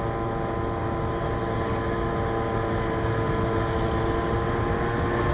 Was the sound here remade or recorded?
recorded